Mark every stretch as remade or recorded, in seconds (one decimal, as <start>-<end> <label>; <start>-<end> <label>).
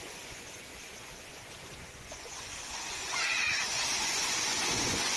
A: 0.0-5.2 remade